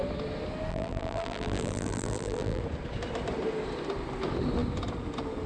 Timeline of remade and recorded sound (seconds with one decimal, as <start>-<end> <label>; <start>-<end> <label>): 0.0-0.7 recorded; 0.7-2.6 remade; 2.6-5.5 recorded